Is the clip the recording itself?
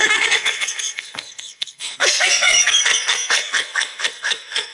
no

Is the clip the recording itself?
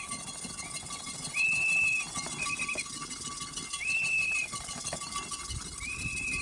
yes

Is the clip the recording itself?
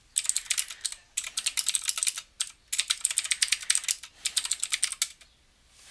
yes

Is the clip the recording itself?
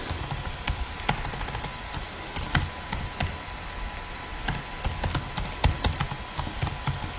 yes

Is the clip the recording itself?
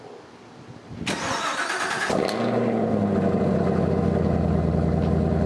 yes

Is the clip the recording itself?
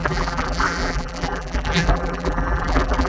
no